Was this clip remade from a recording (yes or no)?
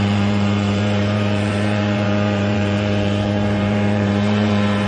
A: yes